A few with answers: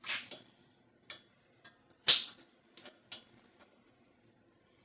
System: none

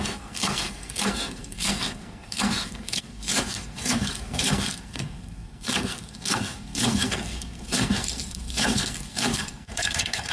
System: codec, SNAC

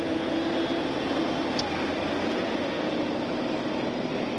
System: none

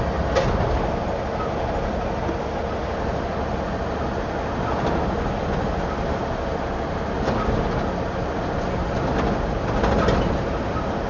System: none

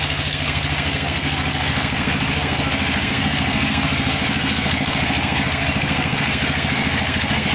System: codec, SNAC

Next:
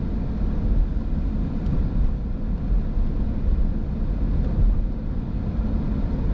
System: none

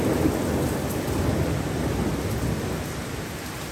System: none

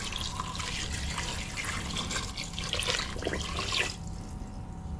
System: none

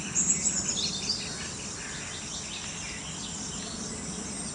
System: none